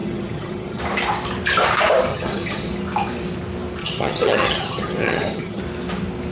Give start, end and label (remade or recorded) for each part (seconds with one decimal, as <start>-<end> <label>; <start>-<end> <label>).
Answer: 0.0-0.8 remade; 0.8-2.1 recorded; 2.1-2.7 remade; 2.7-3.8 recorded; 3.8-5.6 remade; 5.6-6.3 recorded